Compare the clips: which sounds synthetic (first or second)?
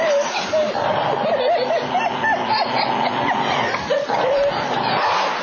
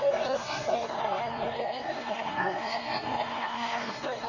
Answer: second